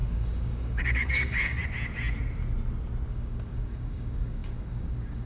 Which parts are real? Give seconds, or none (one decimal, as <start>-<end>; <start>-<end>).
1.6-3.1